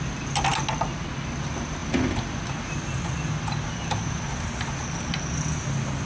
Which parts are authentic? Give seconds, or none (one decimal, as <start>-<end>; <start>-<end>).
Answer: 0.0-6.1